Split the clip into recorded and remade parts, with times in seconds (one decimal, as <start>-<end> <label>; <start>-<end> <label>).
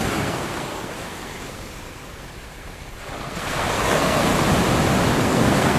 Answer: 0.0-4.3 remade; 4.3-5.2 recorded; 5.2-5.8 remade